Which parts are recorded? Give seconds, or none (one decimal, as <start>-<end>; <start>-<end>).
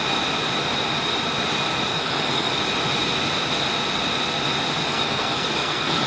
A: 0.0-1.9; 2.5-4.9